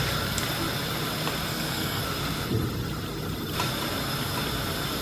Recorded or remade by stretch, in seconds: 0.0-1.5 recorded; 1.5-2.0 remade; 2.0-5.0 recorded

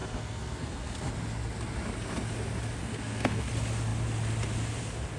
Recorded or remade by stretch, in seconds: 0.0-1.1 remade; 1.1-2.8 recorded; 2.8-3.5 remade; 3.5-5.2 recorded

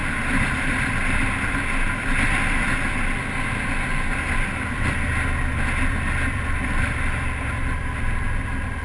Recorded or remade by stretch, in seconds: 0.0-8.8 recorded